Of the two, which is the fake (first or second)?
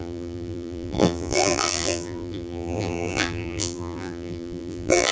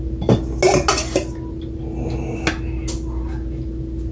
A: first